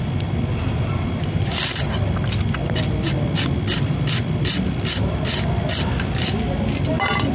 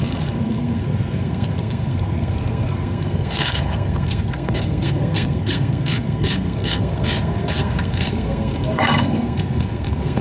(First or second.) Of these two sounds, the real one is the first